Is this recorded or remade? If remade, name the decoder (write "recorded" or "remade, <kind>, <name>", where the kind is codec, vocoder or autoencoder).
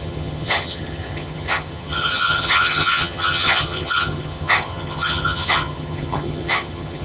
remade, vocoder, HiFi-GAN